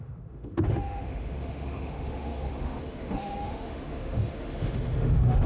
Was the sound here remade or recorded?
remade